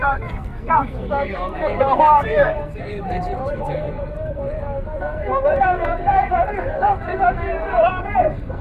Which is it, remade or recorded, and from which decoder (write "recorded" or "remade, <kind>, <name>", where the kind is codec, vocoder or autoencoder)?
remade, codec, SNAC